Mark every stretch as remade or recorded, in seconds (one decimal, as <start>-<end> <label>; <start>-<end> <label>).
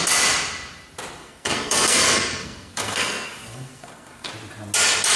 0.0-1.2 recorded; 1.2-4.3 remade; 4.3-5.2 recorded